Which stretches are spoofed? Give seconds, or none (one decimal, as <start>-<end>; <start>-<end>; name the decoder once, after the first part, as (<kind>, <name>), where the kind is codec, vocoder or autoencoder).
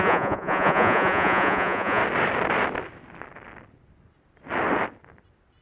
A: 0.0-2.0 (vocoder, Vocos)